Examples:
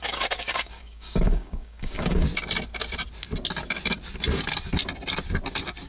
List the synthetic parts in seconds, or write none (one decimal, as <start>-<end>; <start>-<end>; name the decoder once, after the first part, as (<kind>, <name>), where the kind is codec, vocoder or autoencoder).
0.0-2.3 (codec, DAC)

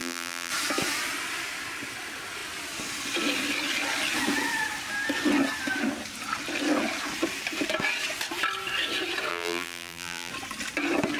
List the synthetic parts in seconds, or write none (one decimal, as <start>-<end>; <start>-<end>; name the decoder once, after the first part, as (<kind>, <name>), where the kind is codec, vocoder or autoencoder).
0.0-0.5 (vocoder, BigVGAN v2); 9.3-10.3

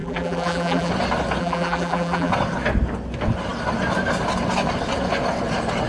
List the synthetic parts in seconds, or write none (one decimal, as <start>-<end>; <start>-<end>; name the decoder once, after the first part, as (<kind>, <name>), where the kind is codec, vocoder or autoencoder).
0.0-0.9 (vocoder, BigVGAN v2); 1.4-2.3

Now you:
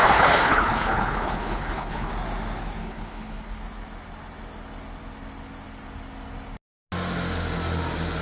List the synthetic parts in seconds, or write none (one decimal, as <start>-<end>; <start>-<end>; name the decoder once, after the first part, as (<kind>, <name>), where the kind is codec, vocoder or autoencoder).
0.0-2.1 (codec, HILCodec); 2.8-3.6

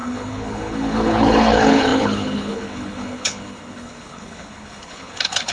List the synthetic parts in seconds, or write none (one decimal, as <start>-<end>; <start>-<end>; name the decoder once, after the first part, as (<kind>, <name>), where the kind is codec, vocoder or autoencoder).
0.0-5.5 (codec, HILCodec)

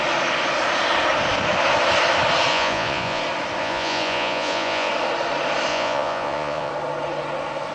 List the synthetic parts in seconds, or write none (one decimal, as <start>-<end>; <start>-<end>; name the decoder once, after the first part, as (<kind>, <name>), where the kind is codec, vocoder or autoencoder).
2.5-3.2 (vocoder, Vocos); 3.6-4.9; 5.7-6.7

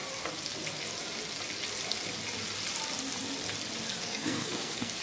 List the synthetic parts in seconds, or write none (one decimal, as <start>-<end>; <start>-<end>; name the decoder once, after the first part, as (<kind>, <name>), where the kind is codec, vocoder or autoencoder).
4.0-5.0 (codec, SNAC)

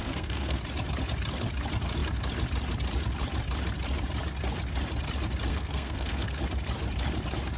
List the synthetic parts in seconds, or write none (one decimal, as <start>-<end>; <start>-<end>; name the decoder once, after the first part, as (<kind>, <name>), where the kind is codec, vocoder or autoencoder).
0.0-0.6 (codec, SNAC); 5.5-6.4